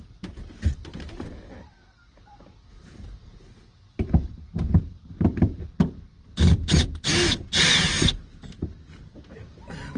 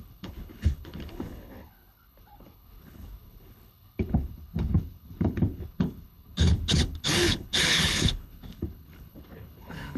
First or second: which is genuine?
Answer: first